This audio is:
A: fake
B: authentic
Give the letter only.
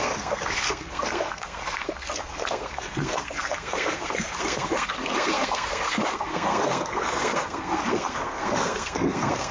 A